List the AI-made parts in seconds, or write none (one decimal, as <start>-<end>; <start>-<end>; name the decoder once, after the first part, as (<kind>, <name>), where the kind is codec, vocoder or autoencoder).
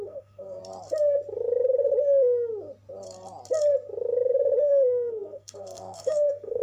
0.0-0.6 (codec, SNAC); 4.6-6.6